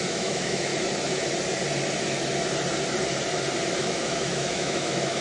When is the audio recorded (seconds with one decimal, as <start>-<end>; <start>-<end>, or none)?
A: 0.7-3.8